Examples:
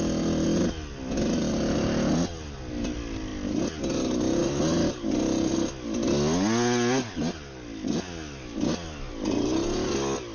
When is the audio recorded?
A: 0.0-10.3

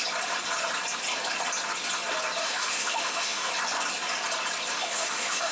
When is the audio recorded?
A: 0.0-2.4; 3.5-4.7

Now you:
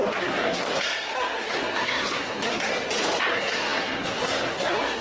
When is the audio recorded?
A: 2.7-3.3

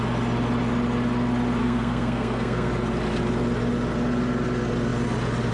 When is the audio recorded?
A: 0.0-1.6; 2.7-5.5

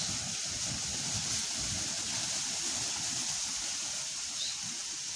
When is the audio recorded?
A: 0.0-5.2

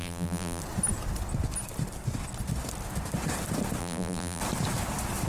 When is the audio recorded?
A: 0.6-3.8; 4.4-5.3

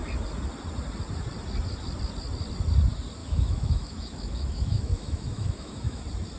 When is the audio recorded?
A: 0.0-3.2; 6.0-6.4

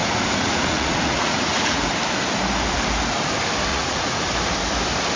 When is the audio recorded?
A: 1.8-3.7; 4.2-5.2